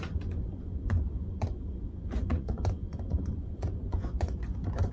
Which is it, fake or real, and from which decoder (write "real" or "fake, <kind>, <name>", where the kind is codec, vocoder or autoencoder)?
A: fake, vocoder, Vocos